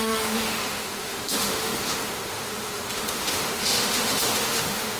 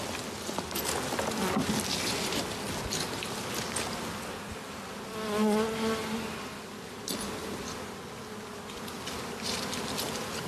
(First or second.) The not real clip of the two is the first